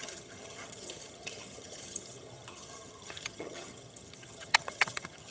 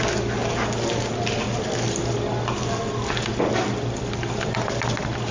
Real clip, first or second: second